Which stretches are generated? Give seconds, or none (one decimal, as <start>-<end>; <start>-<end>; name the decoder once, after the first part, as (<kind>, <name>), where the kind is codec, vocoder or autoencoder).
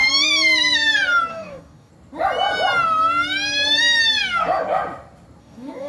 1.3-1.9 (codec, DAC); 5.4-5.9